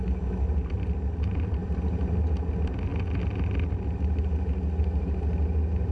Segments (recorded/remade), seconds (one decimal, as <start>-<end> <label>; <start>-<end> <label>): 0.0-5.9 recorded